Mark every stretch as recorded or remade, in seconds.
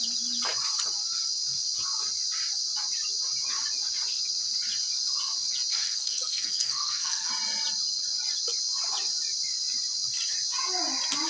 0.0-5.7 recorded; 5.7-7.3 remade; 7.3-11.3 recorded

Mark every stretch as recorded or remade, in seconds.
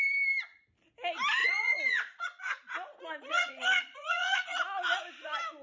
0.0-1.4 recorded; 1.4-4.6 remade; 4.6-5.6 recorded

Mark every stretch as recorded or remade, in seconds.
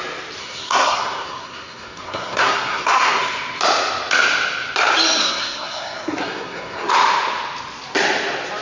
0.0-0.4 recorded; 0.4-3.2 remade; 3.2-5.2 recorded; 5.2-6.9 remade; 6.9-8.6 recorded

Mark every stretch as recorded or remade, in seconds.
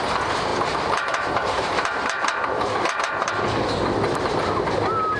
0.0-0.5 recorded; 0.5-3.3 remade; 3.3-5.2 recorded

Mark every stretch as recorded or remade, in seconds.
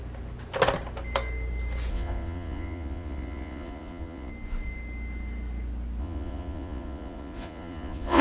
0.0-1.9 recorded; 1.9-4.3 remade; 4.3-6.0 recorded; 6.0-8.2 remade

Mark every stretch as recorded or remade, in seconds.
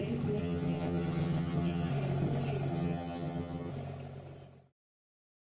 0.0-0.4 recorded; 0.4-1.9 remade; 1.9-2.7 recorded; 2.7-3.7 remade; 3.7-5.4 recorded